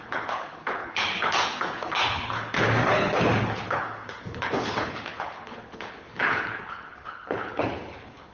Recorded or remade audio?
remade